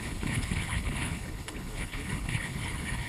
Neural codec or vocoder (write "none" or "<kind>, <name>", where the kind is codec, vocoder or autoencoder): codec, HILCodec